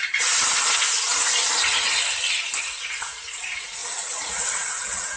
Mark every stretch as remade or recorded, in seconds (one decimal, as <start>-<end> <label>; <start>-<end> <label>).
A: 0.0-2.6 recorded; 2.6-3.8 remade; 3.8-4.3 recorded; 4.3-5.2 remade